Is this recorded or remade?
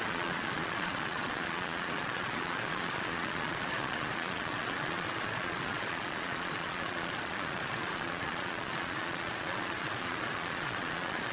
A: remade